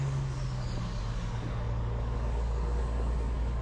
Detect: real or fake fake